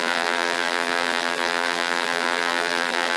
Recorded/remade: remade